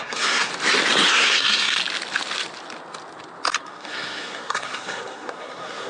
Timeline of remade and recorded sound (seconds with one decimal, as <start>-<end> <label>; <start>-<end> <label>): 0.0-0.5 remade; 0.5-1.1 recorded; 1.1-1.8 remade; 1.8-3.6 recorded; 3.6-5.9 remade